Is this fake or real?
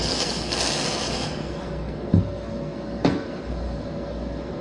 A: fake